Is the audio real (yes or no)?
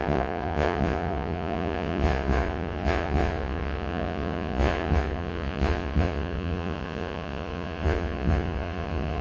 no